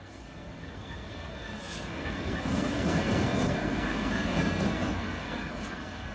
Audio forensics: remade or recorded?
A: remade